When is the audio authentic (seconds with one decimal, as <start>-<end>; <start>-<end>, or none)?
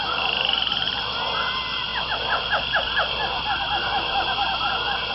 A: 0.0-1.9